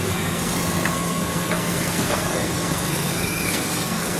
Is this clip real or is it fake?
fake